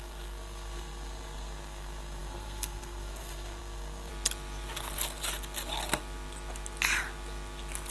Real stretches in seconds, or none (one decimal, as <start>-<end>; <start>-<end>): 4.1-7.9